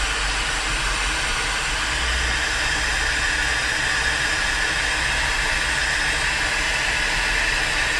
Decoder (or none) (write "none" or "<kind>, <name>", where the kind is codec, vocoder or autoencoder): none